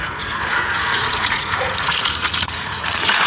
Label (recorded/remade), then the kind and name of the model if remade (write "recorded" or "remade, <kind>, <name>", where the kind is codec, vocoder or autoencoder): remade, vocoder, Vocos